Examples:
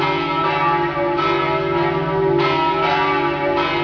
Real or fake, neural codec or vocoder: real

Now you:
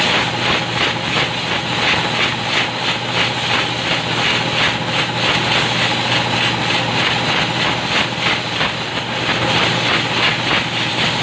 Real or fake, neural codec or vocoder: real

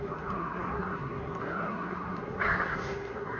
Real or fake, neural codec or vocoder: fake, codec, SNAC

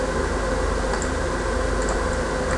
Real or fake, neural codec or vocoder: real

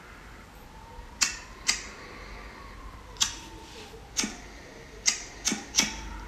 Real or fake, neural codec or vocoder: real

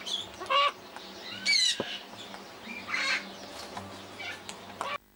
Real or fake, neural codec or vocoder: real